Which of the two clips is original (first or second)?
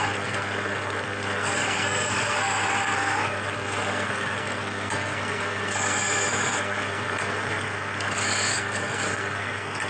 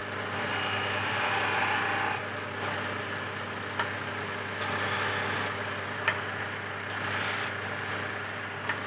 second